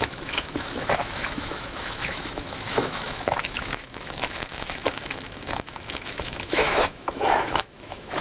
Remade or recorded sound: remade